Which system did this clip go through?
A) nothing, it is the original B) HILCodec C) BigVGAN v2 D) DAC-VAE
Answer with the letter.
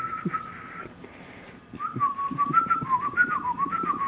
A